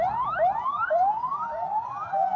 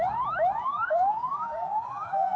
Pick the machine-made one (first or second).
second